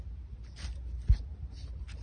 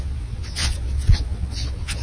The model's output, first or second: second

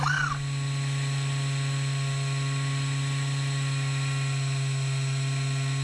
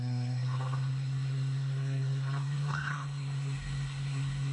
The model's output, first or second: second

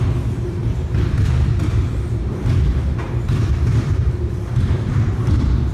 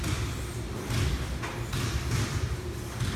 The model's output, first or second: first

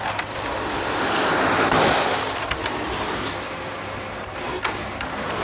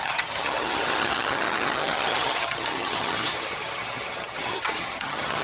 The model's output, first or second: second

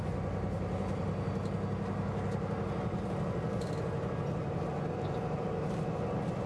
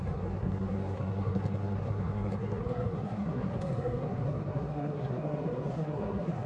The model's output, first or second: second